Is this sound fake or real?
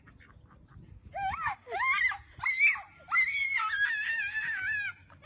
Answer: real